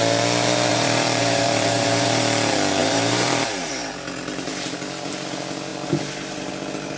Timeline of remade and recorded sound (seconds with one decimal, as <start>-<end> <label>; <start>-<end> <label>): 0.0-0.7 recorded; 0.7-2.2 remade; 2.2-2.8 recorded; 2.8-3.7 remade; 3.7-5.7 recorded; 5.7-6.5 remade; 6.5-7.0 recorded